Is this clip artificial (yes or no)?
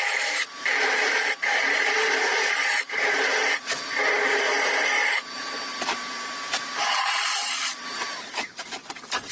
yes